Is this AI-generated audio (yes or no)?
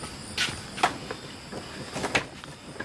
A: no